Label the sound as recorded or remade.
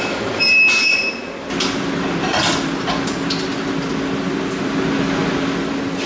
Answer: recorded